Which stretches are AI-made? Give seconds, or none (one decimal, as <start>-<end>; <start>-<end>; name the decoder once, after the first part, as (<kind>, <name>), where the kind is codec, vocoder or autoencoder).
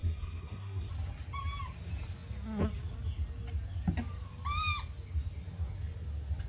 0.0-0.9 (codec, SNAC)